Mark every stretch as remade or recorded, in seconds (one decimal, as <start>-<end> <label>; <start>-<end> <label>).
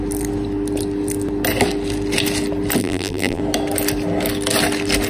0.0-2.8 recorded; 2.8-3.4 remade; 3.4-5.1 recorded